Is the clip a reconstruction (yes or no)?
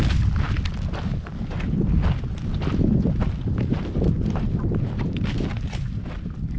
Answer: no